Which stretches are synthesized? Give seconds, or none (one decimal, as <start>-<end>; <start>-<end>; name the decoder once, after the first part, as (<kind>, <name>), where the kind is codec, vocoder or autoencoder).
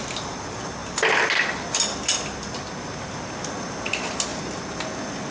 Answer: none